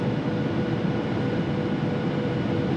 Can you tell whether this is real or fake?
real